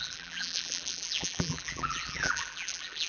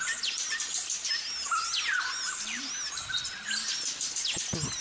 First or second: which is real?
second